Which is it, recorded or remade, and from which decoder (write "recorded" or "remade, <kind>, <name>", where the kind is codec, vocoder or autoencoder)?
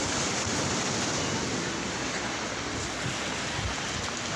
recorded